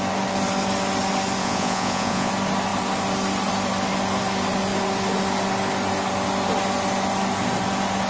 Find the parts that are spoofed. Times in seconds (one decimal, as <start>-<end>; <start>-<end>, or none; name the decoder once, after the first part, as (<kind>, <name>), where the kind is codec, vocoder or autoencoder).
1.4-2.3 (vocoder, Vocos)